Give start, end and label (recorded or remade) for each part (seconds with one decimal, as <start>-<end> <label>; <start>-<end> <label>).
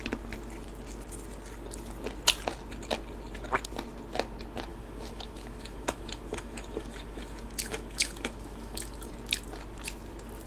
0.0-4.7 recorded; 4.7-9.1 remade; 9.1-10.5 recorded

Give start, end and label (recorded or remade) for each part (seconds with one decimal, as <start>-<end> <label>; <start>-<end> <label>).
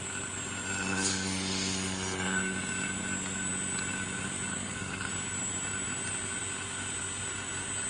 0.0-4.5 recorded; 4.5-5.1 remade; 5.1-7.9 recorded